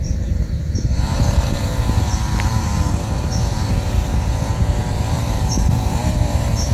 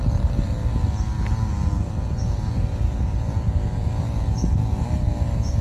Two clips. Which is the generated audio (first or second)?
first